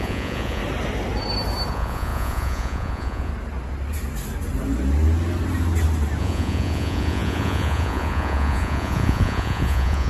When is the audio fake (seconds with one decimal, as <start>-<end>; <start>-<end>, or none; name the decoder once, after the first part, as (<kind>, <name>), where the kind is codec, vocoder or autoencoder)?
0.0-0.6 (vocoder, Vocos); 1.7-3.3; 6.2-10.1